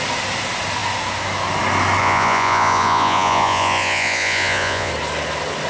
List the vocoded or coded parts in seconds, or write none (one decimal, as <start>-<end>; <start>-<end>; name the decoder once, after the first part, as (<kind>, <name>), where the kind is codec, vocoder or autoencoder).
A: 2.0-4.9 (vocoder, Vocos)